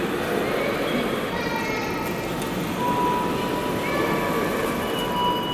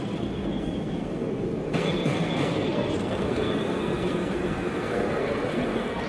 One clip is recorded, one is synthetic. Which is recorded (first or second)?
first